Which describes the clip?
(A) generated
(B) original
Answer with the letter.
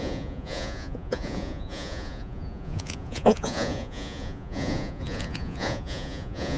A